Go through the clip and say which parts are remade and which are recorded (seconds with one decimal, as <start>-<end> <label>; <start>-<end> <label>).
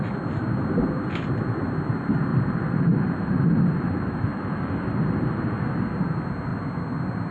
0.0-2.3 recorded; 2.3-5.6 remade; 5.6-7.3 recorded